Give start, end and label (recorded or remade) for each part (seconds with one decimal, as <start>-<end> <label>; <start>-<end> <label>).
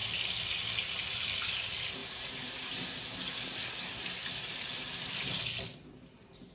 0.0-6.5 recorded